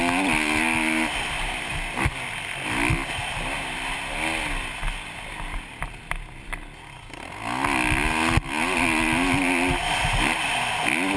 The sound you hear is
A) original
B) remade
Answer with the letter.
A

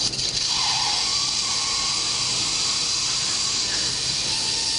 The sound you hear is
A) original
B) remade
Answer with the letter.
A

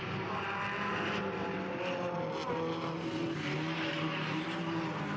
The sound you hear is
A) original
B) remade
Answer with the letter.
A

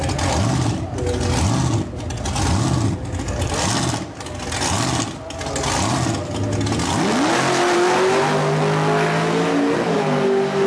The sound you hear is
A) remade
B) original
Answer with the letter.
B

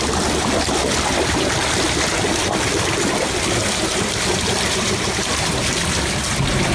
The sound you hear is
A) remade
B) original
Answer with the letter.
B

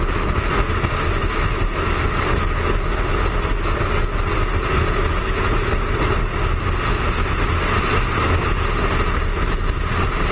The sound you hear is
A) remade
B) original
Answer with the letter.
B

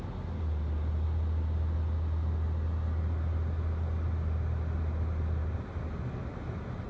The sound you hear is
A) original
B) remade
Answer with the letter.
A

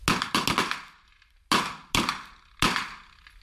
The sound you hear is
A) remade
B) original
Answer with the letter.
B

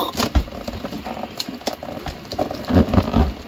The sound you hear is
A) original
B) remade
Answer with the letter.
A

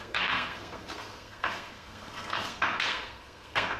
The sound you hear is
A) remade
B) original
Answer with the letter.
A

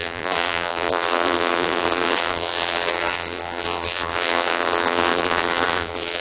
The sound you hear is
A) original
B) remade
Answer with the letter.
B